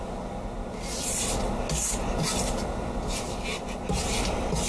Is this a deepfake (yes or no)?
no